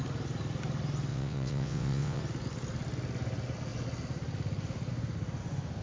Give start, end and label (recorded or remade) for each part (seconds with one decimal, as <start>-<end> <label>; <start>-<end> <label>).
0.0-1.1 recorded; 1.1-2.2 remade; 2.2-5.8 recorded